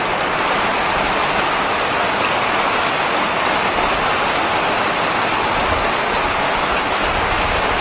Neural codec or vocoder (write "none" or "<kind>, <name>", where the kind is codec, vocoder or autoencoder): none